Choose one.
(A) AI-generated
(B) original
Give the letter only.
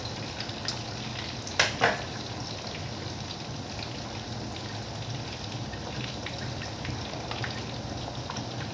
B